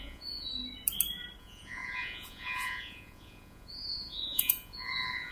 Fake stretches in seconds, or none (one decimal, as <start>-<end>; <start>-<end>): 0.0-0.5; 1.4-5.3